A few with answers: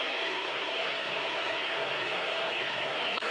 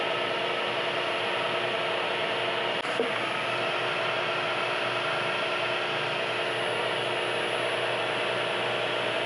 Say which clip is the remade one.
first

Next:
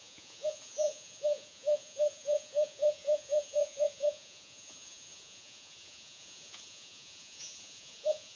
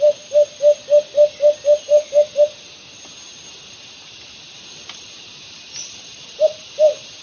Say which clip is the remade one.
first